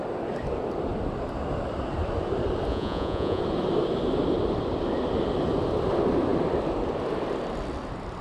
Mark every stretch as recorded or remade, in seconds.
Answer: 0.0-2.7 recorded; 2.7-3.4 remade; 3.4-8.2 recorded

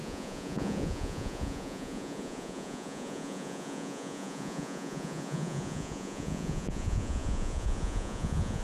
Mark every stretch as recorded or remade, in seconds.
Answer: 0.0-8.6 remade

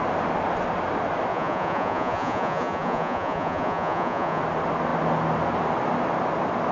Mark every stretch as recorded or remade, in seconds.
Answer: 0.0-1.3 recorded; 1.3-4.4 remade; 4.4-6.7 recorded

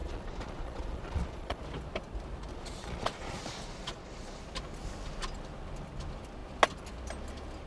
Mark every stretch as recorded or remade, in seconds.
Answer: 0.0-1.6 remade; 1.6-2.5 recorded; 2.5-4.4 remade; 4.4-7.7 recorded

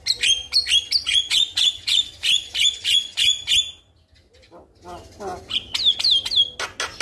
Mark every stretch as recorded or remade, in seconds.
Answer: 0.0-1.0 recorded; 1.0-3.5 remade; 3.5-7.0 recorded

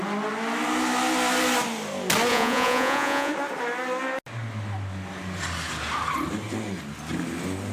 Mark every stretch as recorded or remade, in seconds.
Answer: 0.0-2.3 recorded; 2.3-3.3 remade; 3.3-7.7 recorded

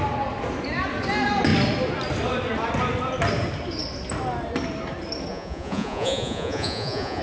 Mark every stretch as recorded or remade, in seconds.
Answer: 0.0-5.3 recorded; 5.3-7.2 remade